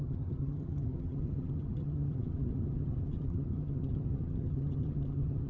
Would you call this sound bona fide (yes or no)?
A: no